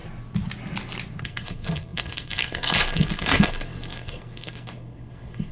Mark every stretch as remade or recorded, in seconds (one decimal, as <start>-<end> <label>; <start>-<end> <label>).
0.0-1.2 recorded; 1.2-5.5 remade